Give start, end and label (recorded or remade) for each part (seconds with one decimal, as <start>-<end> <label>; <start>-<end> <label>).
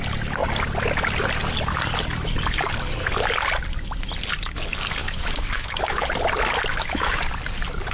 0.0-5.0 recorded; 5.0-6.0 remade; 6.0-6.7 recorded; 6.7-7.2 remade; 7.2-7.9 recorded